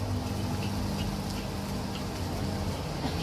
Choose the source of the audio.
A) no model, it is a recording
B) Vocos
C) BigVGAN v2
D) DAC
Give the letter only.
A